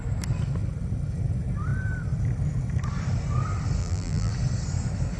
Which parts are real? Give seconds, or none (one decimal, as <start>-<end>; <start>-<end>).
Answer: 0.0-3.8; 4.3-5.2